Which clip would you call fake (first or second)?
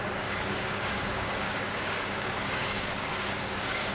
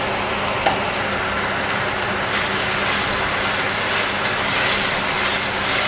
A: first